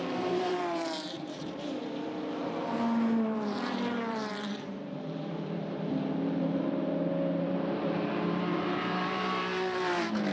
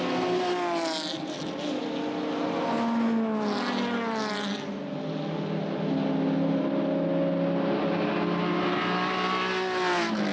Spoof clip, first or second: first